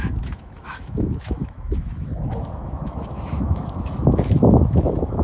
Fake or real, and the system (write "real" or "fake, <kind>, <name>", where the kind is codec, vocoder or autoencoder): fake, autoencoder, DAC-VAE